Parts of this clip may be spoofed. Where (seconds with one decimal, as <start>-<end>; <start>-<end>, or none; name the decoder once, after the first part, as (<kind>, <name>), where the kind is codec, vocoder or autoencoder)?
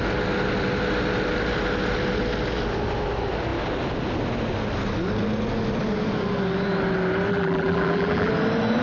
7.3-8.3 (vocoder, BigVGAN v2)